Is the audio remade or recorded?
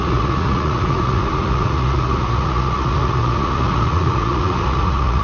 remade